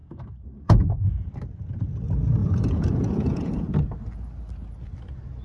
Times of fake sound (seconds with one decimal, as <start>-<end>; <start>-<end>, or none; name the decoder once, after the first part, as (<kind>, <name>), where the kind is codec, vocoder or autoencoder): 0.0-1.3 (vocoder, Vocos); 2.4-3.7